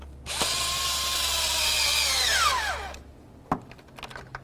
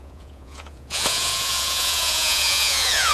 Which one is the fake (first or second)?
second